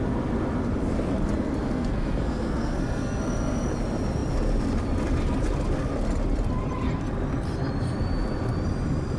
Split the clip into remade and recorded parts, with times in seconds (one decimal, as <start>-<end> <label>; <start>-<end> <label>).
0.0-1.6 recorded; 1.6-3.2 remade; 3.2-9.2 recorded